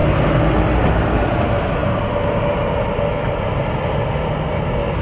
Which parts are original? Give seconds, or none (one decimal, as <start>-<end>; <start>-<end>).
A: 0.0-5.0